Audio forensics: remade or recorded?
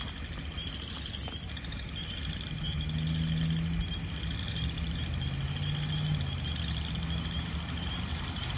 recorded